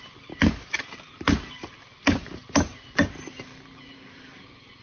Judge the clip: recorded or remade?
recorded